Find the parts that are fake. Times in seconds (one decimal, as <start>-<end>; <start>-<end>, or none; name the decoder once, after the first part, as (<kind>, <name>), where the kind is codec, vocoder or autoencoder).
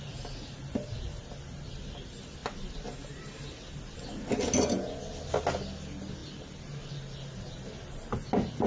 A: none